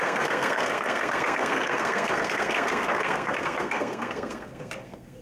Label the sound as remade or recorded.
remade